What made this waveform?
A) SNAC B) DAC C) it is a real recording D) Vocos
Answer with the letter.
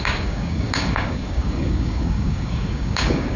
B